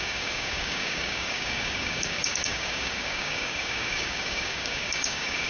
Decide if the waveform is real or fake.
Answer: fake